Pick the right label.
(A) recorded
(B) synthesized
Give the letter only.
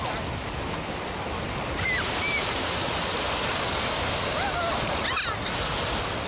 A